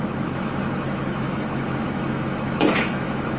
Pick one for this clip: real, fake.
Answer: fake